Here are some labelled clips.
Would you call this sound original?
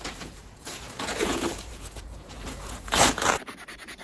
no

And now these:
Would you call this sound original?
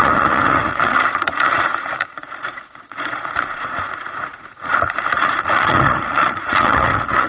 no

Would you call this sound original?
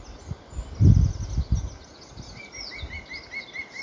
yes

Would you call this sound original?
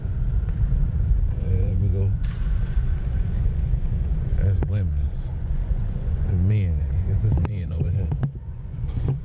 no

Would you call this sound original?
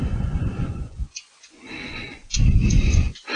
no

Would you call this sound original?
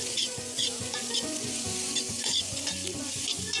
no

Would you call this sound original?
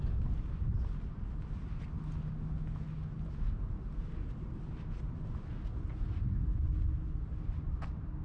yes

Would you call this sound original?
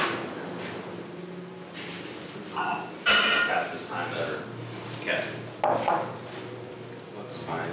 yes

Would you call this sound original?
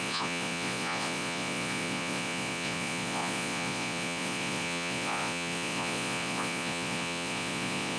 no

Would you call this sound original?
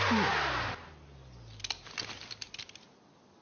yes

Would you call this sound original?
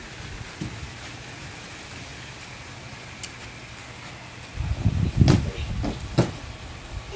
yes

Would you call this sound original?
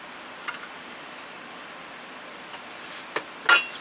yes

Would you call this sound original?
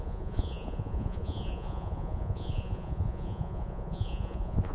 no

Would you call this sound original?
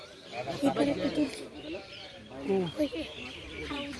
yes